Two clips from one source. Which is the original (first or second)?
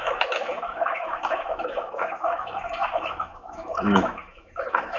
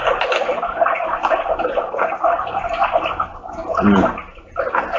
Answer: second